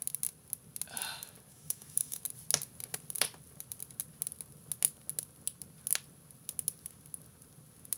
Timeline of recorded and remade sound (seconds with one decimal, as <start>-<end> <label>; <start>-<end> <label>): 0.0-1.5 recorded; 1.5-2.2 remade; 2.2-8.0 recorded